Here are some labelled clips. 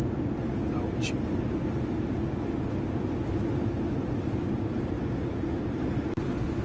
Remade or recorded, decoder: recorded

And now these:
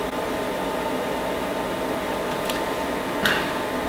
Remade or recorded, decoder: recorded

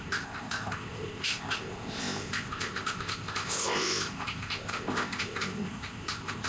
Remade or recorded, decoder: remade, codec, ZipCodec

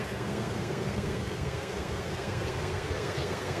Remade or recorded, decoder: remade, codec, SNAC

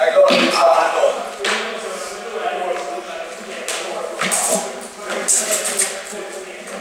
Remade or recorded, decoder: recorded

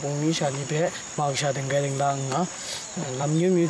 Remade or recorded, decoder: remade, vocoder, BigVGAN v2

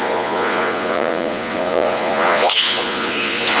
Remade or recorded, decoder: remade, vocoder, Vocos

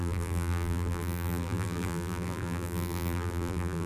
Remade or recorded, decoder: remade, vocoder, BigVGAN v2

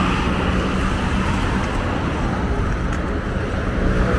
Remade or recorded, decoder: recorded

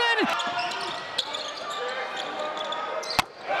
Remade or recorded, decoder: recorded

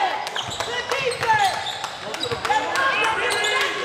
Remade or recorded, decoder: recorded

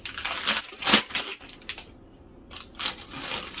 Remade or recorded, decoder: recorded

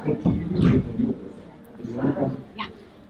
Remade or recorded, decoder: recorded